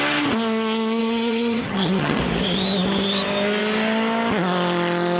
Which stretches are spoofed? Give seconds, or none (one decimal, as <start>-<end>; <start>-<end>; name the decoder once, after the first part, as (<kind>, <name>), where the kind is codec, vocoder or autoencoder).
1.0-2.2 (vocoder, HiFi-GAN)

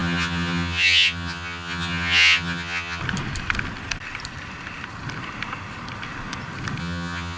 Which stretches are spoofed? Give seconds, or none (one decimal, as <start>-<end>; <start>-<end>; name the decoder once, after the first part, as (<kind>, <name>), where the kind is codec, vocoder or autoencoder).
0.0-3.0 (vocoder, HiFi-GAN); 6.8-7.4